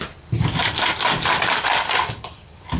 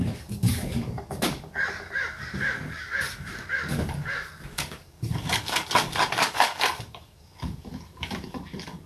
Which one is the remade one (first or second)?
second